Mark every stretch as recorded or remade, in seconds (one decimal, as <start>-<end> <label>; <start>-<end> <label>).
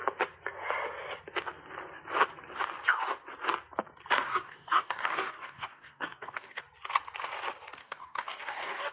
0.0-4.3 recorded; 4.3-6.6 remade; 6.6-7.8 recorded; 7.8-8.9 remade